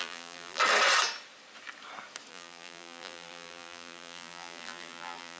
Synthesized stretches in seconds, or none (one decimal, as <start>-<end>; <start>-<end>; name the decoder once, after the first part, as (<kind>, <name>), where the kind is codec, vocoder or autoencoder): 0.0-0.6 (vocoder, BigVGAN v2); 2.3-5.4